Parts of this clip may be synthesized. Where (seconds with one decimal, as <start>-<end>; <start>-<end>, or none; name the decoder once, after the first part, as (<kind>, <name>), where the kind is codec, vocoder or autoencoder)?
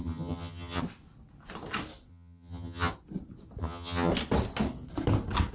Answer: 0.0-0.8 (vocoder, HiFi-GAN); 2.1-2.9; 3.6-4.1